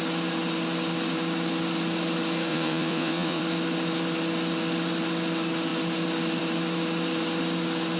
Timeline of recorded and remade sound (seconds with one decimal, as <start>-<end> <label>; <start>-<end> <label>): 0.0-2.5 recorded; 2.5-3.4 remade; 3.4-8.0 recorded